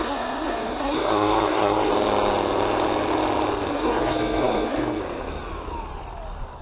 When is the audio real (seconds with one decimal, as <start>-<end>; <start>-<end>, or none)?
1.9-3.7; 5.0-6.6